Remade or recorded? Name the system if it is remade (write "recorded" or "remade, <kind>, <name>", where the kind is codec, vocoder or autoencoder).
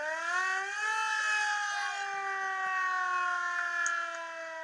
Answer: recorded